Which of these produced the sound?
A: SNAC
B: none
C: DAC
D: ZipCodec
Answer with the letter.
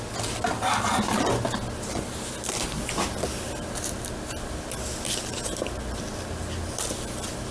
B